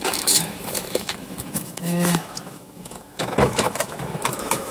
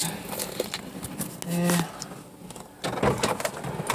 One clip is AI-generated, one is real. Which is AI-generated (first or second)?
first